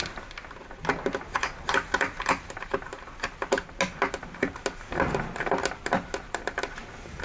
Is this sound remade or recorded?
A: recorded